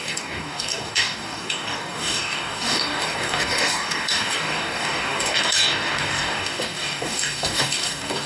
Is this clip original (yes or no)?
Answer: no